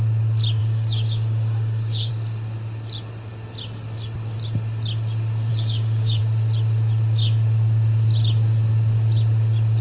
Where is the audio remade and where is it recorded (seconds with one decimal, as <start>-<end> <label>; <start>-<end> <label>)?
0.0-0.6 recorded; 0.6-2.1 remade; 2.1-5.5 recorded; 5.5-6.2 remade; 6.2-9.8 recorded